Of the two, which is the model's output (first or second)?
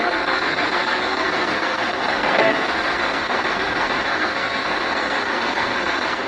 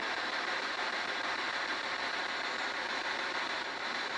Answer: first